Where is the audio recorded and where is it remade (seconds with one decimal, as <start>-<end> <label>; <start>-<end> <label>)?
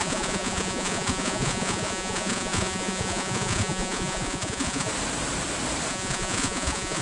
0.0-4.9 remade; 4.9-5.9 recorded; 5.9-7.0 remade